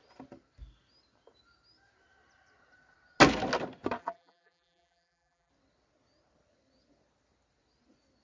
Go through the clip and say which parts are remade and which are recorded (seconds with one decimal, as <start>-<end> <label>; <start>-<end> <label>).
0.0-4.0 recorded; 4.0-5.5 remade; 5.5-8.2 recorded